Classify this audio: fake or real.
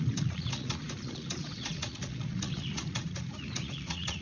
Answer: fake